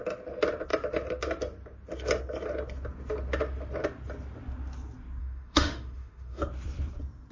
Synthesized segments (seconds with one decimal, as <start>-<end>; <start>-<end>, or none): 5.2-6.4